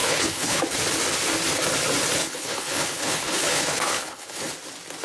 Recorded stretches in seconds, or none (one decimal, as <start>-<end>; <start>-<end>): 0.6-2.2; 4.5-5.0